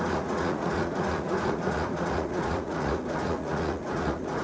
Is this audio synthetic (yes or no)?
yes